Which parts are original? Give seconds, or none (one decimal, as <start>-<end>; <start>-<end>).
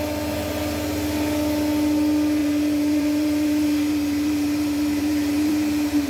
0.0-2.4